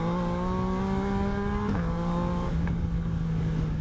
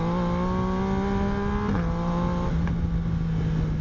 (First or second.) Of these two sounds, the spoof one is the first